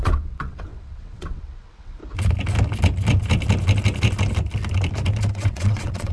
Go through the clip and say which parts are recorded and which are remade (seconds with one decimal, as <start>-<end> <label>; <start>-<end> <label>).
0.0-2.0 remade; 2.0-5.3 recorded; 5.3-6.1 remade

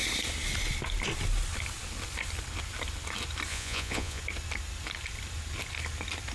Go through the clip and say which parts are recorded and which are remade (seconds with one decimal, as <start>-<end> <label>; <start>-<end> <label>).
0.0-3.5 recorded; 3.5-4.2 remade; 4.2-6.3 recorded

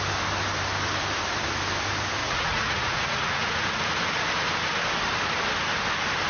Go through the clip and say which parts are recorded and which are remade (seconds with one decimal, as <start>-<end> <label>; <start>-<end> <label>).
0.0-2.2 recorded; 2.2-3.8 remade; 3.8-6.3 recorded

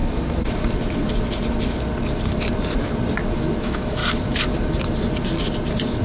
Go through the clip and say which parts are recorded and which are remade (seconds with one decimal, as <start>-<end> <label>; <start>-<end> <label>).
0.0-3.6 recorded; 3.6-4.0 remade; 4.0-6.0 recorded

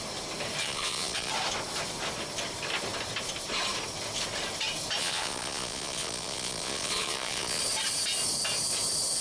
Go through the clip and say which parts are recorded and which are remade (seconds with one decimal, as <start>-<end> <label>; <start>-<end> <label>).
0.0-0.6 recorded; 0.6-1.3 remade; 1.3-5.0 recorded; 5.0-7.6 remade; 7.6-9.2 recorded